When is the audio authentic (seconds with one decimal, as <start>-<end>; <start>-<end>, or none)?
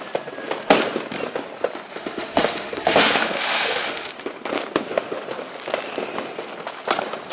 0.0-1.9; 4.1-7.3